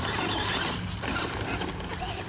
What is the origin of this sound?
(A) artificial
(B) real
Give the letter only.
A